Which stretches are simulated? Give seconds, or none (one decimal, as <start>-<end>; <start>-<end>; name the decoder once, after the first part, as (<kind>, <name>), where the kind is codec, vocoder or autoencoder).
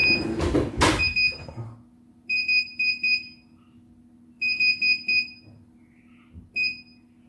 none